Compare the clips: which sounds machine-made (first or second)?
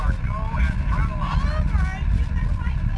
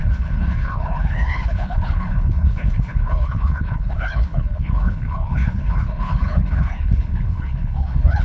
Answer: second